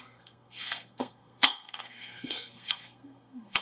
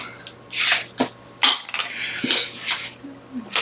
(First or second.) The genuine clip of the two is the second